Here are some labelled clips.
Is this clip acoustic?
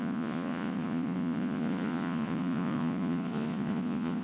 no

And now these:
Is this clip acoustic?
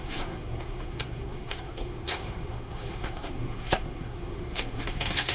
no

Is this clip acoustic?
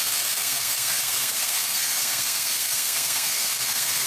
no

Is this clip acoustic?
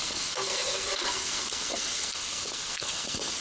no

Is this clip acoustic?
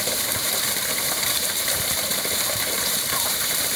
no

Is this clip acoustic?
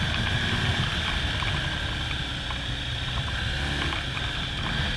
yes